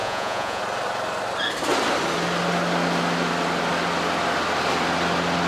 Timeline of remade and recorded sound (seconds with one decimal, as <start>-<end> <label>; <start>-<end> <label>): 0.0-0.6 remade; 0.6-5.5 recorded